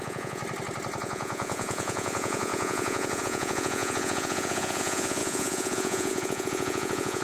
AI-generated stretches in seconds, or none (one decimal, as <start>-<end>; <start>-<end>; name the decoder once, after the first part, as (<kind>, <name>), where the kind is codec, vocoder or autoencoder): 0.0-0.4 (vocoder, Vocos); 1.0-7.2